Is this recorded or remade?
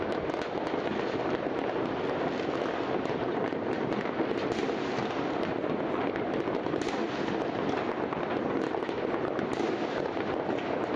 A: recorded